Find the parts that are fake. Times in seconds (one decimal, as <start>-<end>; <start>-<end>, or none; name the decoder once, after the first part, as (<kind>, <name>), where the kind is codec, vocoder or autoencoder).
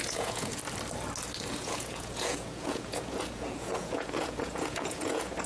0.0-0.6 (vocoder, Vocos); 1.6-5.5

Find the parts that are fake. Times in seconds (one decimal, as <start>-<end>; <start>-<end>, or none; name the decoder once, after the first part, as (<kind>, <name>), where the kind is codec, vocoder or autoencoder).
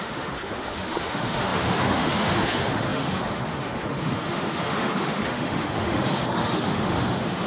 0.0-7.5 (autoencoder, DAC-VAE)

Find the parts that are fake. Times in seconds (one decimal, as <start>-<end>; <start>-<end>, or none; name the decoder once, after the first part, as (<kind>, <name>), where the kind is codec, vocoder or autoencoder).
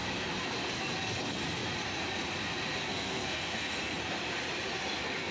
2.9-4.0 (codec, SNAC)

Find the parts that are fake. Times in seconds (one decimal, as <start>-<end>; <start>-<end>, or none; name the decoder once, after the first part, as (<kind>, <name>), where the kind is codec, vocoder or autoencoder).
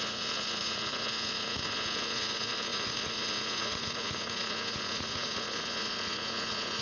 0.0-6.8 (vocoder, Vocos)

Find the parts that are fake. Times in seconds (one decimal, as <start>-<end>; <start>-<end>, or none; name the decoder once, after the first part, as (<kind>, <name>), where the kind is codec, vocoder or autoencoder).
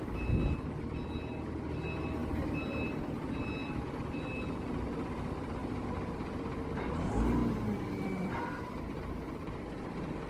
5.6-6.8 (vocoder, BigVGAN v2); 7.4-8.4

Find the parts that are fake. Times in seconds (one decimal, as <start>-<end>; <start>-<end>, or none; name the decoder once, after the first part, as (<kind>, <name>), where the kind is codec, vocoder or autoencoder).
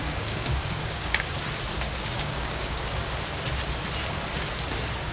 0.0-1.3 (codec, DAC); 1.9-3.1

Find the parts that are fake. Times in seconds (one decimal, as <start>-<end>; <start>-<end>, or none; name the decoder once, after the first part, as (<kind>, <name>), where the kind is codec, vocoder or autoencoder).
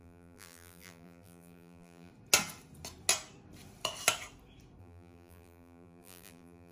0.0-2.1 (vocoder, BigVGAN v2); 4.8-6.7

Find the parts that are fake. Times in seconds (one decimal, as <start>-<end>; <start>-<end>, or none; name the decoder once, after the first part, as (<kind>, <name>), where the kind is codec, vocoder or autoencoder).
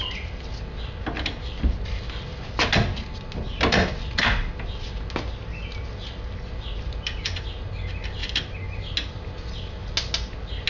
none